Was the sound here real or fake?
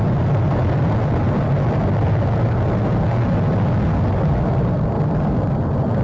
real